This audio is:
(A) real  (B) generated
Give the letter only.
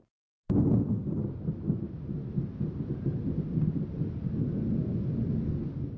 A